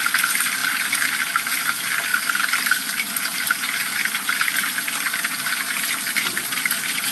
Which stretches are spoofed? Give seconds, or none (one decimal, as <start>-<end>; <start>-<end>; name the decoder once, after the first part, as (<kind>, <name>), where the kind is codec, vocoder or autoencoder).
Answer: none